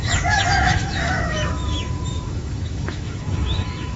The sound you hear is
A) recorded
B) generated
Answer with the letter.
B